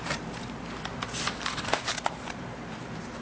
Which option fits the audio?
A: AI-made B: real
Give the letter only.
A